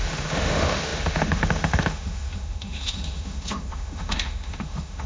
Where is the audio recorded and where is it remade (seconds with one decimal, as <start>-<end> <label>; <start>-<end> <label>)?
0.0-5.1 remade